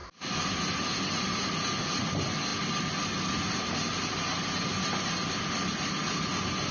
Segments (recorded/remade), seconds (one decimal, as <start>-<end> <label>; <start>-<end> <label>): 0.0-6.7 recorded